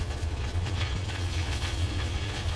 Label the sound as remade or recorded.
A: remade